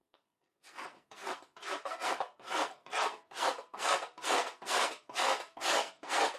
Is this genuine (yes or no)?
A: no